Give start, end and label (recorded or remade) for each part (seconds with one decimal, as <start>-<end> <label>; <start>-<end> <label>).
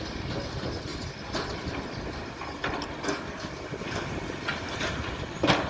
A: 0.0-5.7 recorded